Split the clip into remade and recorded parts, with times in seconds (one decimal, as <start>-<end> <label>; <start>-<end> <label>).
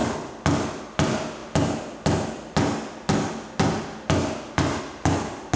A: 0.0-5.6 recorded